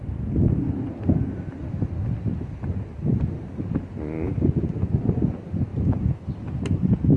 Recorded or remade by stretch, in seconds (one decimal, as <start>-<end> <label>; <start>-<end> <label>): 0.0-7.2 recorded